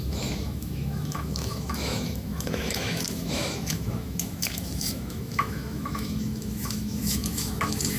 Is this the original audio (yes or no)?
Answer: no